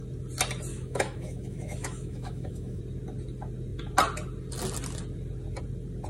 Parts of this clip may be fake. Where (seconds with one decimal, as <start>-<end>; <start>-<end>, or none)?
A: 0.7-2.8